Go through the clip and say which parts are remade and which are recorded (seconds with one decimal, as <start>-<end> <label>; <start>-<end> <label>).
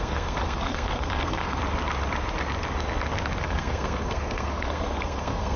0.0-1.6 remade; 1.6-3.4 recorded; 3.4-5.6 remade